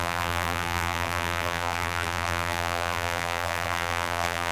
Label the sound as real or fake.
fake